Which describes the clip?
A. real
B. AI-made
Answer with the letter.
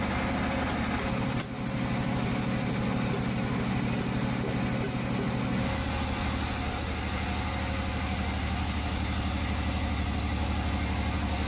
A